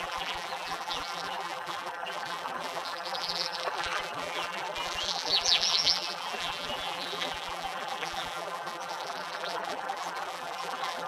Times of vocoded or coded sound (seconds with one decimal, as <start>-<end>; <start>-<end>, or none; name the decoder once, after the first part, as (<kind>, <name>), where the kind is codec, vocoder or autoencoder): 0.0-11.1 (vocoder, BigVGAN v2)